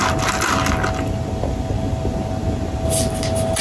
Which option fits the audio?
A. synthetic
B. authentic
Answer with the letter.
B